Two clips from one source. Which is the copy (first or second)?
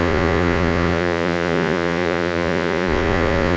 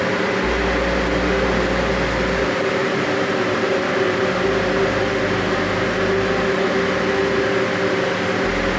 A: first